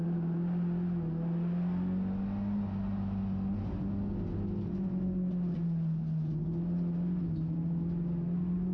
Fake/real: real